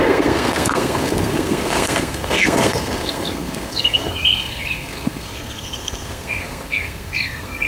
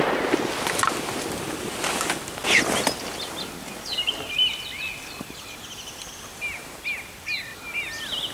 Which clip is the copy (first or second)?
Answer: first